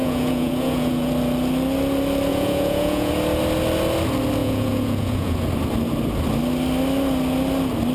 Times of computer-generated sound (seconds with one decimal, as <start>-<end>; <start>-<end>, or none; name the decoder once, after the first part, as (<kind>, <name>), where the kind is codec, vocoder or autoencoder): 0.0-1.1 (vocoder, Vocos); 2.3-3.1; 4.4-5.4